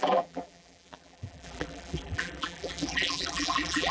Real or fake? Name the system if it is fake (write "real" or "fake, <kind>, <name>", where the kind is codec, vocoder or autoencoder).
fake, vocoder, BigVGAN v2